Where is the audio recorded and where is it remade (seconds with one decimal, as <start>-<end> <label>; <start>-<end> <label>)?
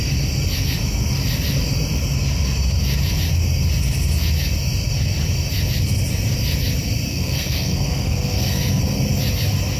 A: 0.0-7.1 recorded; 7.1-8.8 remade; 8.8-9.8 recorded